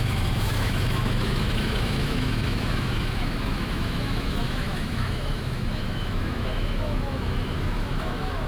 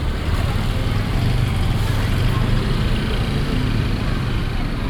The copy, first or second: first